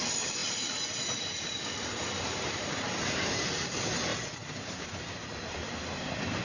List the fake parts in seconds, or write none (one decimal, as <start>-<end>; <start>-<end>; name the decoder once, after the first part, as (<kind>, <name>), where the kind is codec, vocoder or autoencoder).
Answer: 0.0-6.4 (vocoder, BigVGAN v2)